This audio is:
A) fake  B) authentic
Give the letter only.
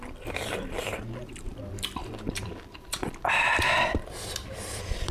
A